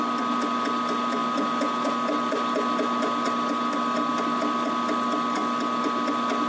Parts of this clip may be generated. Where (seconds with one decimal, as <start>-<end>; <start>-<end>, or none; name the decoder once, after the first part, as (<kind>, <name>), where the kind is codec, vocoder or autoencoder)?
none